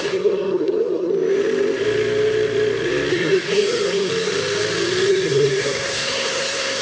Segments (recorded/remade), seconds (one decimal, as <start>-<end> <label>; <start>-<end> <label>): 0.0-1.1 remade; 1.1-3.1 recorded; 3.1-4.1 remade; 4.1-5.1 recorded; 5.1-6.8 remade